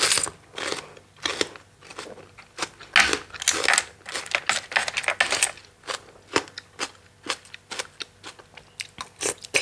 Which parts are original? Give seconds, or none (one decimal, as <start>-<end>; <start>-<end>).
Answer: 0.0-9.6